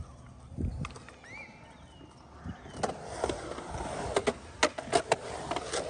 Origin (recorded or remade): recorded